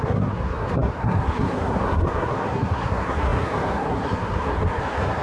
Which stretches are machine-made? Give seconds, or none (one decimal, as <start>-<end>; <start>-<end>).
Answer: 0.0-5.2